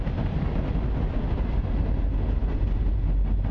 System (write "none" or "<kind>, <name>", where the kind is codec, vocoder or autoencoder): none